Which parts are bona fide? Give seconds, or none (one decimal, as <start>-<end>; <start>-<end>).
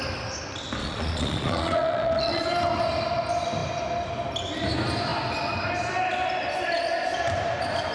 0.0-0.8; 2.4-7.9